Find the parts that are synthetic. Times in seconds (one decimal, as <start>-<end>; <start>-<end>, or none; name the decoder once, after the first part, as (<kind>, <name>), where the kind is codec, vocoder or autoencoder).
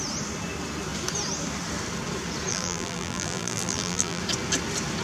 2.5-4.2 (vocoder, BigVGAN v2)